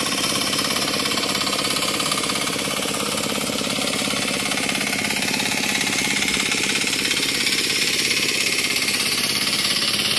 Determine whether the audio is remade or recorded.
remade